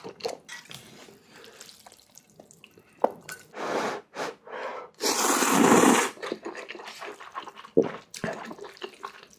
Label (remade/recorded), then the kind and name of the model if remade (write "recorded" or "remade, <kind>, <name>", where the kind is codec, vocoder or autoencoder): recorded